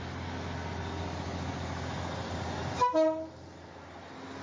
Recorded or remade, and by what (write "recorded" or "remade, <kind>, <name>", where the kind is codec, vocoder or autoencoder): recorded